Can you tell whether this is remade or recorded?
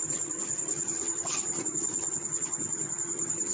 remade